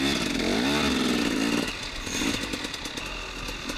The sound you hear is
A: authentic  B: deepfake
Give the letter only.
A